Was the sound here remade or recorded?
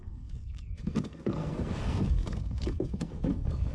remade